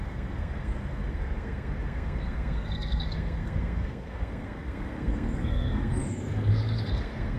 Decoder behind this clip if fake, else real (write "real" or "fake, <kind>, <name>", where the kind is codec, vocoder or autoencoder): fake, codec, SNAC